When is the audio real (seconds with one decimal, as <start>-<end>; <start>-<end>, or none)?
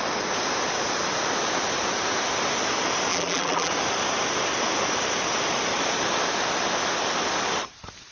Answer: 0.0-3.1; 3.7-8.1